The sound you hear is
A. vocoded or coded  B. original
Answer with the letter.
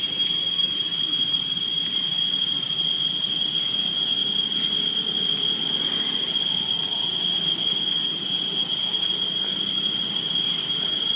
A